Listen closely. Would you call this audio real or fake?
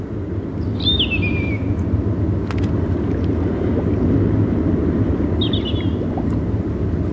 real